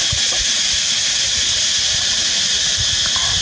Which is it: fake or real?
real